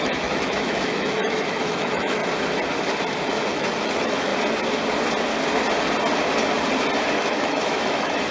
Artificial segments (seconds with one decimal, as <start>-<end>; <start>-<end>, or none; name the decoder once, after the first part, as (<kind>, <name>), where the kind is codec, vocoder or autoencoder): 0.0-2.2 (autoencoder, DAC-VAE); 3.3-4.3; 7.2-8.3